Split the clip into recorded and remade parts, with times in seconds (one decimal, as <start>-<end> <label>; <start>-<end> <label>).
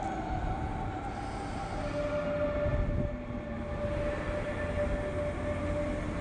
0.0-6.2 recorded